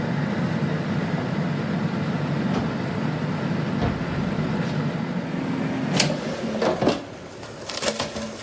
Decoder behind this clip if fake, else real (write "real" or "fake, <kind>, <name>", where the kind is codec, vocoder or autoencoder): real